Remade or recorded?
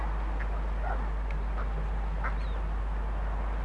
recorded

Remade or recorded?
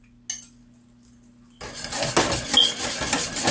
recorded